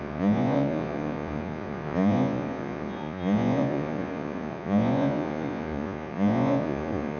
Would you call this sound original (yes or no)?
no